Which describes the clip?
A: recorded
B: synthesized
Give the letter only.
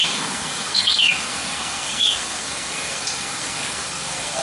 B